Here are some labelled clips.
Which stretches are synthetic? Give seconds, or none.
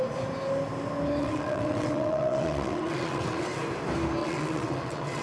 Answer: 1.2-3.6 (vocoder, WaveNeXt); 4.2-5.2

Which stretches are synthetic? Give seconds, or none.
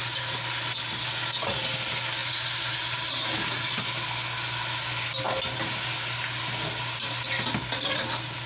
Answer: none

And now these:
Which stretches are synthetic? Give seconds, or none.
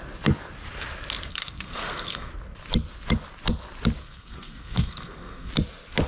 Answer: 1.3-2.3 (codec, SNAC); 4.0-5.5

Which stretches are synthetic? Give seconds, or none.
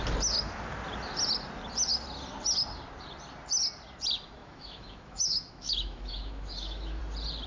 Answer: 4.4-7.0 (autoencoder, DAC-VAE)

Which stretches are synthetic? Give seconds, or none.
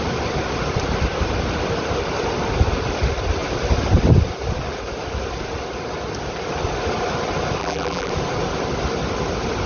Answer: 7.6-8.1 (vocoder, BigVGAN v2)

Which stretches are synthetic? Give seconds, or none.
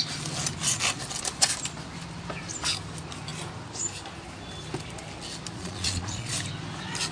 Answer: 5.6-6.3 (vocoder, Vocos)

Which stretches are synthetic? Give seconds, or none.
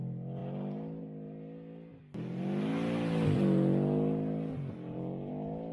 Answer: none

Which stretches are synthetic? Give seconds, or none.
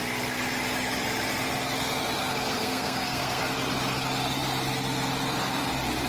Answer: 2.2-3.4 (codec, SNAC)